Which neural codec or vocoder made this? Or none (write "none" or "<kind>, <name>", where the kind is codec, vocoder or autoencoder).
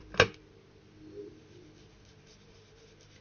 none